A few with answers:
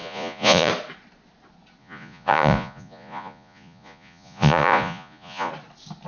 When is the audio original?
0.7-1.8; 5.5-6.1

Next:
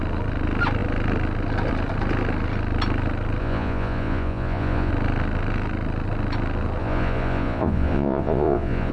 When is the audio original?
0.0-3.4; 4.9-6.8